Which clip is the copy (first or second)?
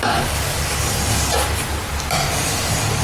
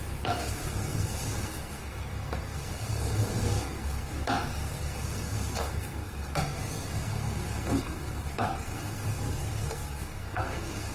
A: second